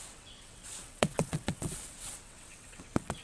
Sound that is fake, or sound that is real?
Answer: fake